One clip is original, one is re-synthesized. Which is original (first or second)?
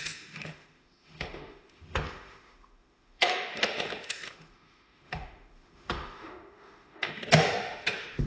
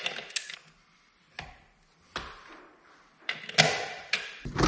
second